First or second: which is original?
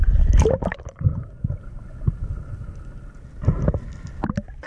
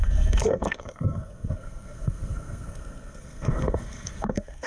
first